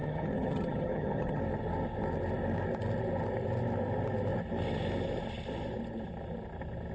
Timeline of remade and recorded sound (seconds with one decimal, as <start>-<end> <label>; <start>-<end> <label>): 0.0-1.4 remade; 1.4-6.9 recorded